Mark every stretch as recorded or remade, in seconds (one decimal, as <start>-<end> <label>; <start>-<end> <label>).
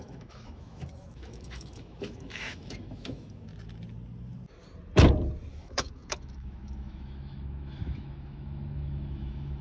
0.0-3.5 remade; 3.5-5.5 recorded; 5.5-9.6 remade